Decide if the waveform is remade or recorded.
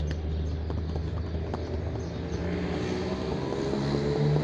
recorded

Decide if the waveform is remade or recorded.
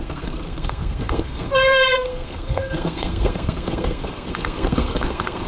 remade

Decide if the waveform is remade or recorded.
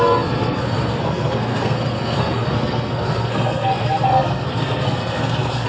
remade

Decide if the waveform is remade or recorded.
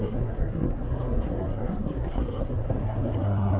remade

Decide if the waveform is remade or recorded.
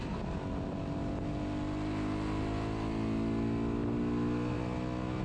recorded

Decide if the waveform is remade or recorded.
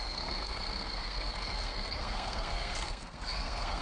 remade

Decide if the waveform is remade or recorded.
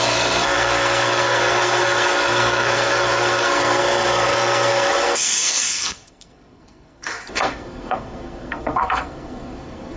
remade